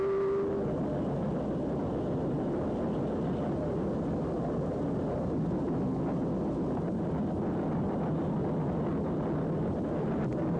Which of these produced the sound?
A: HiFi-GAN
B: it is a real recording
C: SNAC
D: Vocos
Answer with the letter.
B